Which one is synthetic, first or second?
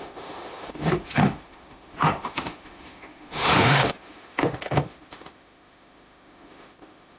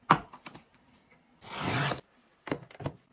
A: first